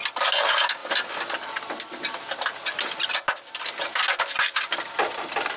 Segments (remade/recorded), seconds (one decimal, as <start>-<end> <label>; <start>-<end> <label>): 0.0-5.6 recorded